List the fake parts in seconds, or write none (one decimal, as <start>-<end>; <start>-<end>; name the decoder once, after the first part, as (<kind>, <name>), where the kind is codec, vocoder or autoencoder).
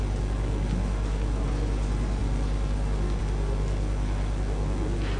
none